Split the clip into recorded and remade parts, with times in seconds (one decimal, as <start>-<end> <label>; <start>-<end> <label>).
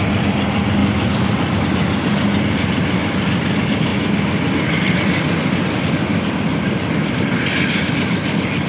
0.0-8.7 recorded